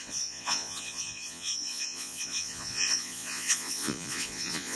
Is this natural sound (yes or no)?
no